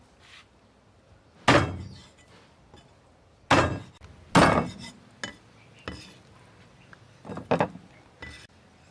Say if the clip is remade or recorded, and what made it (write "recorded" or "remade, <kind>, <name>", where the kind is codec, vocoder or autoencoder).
recorded